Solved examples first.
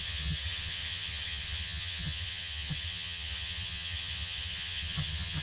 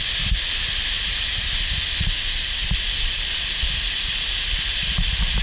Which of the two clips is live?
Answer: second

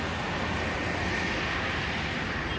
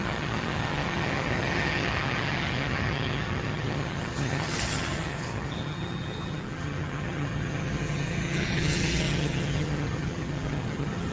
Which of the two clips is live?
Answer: first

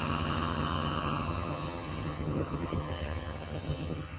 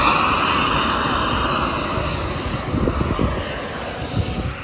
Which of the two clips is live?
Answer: second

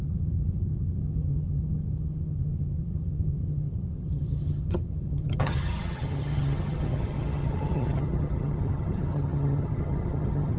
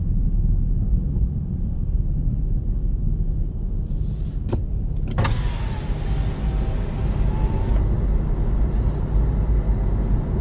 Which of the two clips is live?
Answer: second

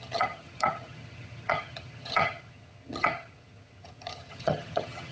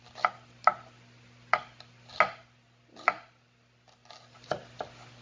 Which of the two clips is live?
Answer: second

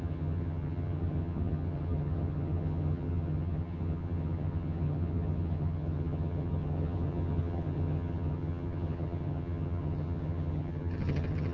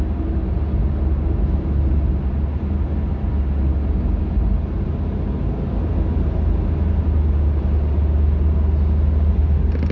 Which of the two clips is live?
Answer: second